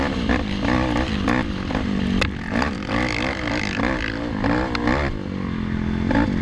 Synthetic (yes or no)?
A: no